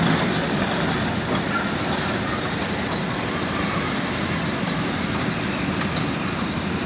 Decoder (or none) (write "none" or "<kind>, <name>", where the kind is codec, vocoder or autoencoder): none